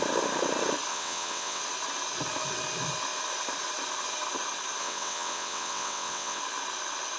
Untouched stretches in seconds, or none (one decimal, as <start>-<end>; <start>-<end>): 0.0-0.9; 1.6-4.8; 6.4-7.2